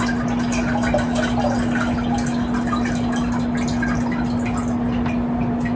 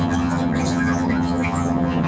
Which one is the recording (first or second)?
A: first